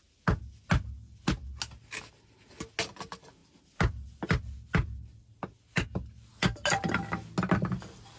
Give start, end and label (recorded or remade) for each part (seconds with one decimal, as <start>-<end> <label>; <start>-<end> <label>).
0.0-8.2 recorded